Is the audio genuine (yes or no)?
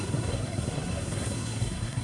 no